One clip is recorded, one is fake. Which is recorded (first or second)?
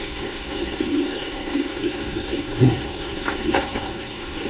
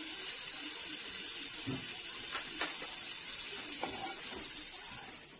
second